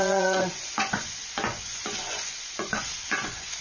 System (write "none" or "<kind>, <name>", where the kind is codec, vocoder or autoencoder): vocoder, Vocos